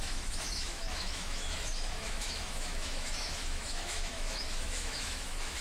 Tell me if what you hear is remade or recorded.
remade